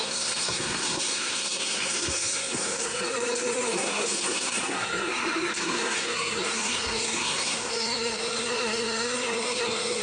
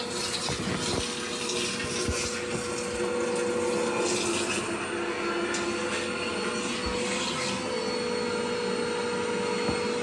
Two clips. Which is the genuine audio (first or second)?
second